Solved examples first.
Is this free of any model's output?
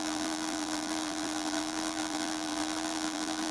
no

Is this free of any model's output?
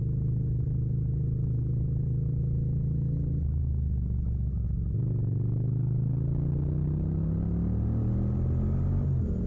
yes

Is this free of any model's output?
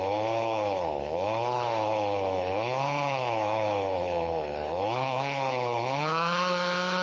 no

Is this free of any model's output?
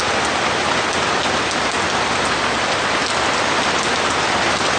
yes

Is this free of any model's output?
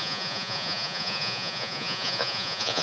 no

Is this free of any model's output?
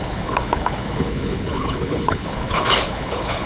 no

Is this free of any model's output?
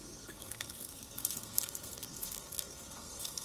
no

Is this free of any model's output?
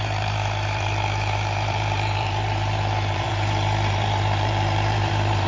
no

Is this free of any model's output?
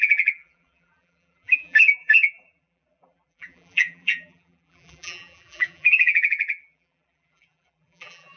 no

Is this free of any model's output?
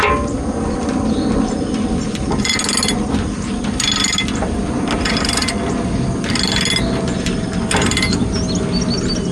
yes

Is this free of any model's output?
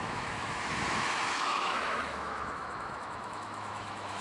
no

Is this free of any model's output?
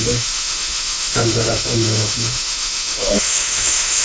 no